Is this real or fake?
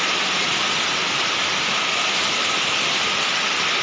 real